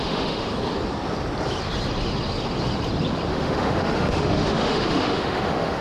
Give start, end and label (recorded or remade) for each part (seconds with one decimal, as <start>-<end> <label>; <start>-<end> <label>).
0.0-0.5 remade; 0.5-3.3 recorded; 3.3-5.8 remade

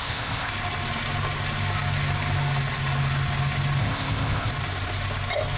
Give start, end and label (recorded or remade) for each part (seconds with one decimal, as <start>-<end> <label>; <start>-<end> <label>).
0.0-0.5 remade; 0.5-3.8 recorded; 3.8-4.5 remade; 4.5-5.6 recorded

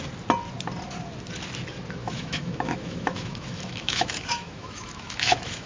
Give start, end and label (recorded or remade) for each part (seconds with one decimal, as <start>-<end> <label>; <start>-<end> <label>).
0.0-2.0 recorded; 2.0-5.7 remade